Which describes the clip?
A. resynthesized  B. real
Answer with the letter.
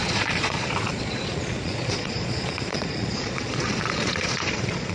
A